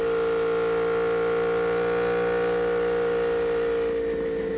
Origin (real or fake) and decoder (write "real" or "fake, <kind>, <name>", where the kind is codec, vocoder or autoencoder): real